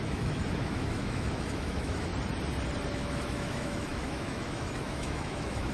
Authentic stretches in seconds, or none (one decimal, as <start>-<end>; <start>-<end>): 2.1-2.9